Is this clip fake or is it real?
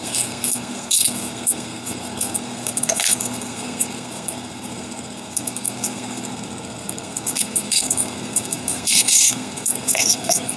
fake